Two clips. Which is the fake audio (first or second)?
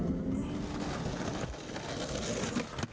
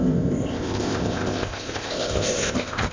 second